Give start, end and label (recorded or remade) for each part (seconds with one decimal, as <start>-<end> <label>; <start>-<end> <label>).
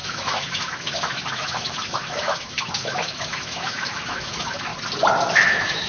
0.0-4.7 remade; 4.7-5.3 recorded; 5.3-5.9 remade